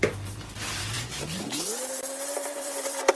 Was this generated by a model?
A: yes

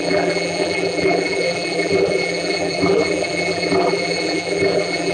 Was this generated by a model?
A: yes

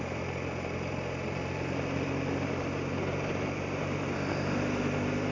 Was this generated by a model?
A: yes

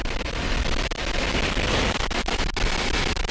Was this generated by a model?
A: yes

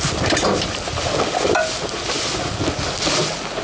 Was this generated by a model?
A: no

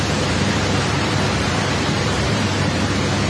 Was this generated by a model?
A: yes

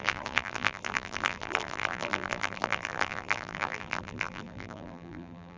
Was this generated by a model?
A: yes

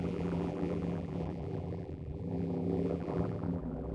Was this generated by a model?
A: yes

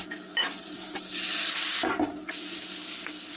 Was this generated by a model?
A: no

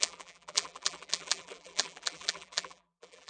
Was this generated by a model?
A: yes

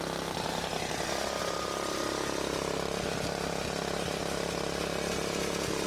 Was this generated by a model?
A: no